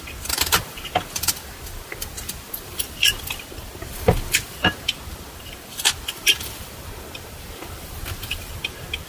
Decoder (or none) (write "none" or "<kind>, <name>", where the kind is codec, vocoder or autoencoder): vocoder, BigVGAN v2